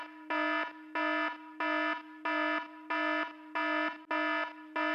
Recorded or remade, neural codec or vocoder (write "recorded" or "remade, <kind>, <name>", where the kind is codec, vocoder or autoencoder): recorded